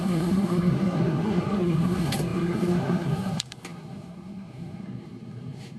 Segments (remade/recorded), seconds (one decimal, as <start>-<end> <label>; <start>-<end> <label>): 0.0-5.8 remade